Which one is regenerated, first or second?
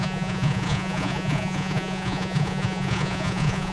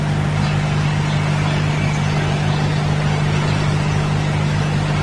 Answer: first